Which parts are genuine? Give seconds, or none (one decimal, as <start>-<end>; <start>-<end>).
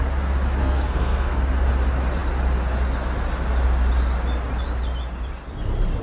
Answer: 0.0-0.6; 1.4-6.0